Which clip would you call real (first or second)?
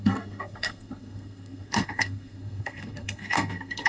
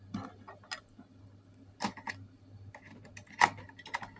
second